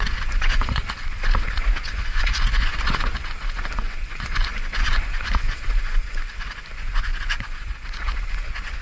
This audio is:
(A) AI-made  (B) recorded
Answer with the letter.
A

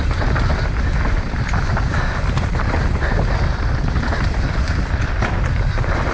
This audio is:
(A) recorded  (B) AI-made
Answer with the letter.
A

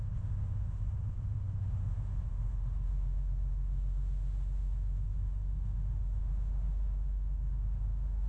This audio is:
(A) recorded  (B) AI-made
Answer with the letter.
B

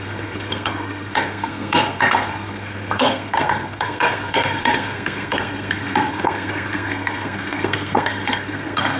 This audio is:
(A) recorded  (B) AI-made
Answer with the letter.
B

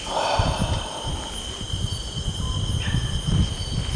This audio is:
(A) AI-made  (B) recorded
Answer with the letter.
B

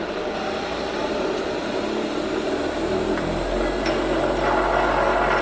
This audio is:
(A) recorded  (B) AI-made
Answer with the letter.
A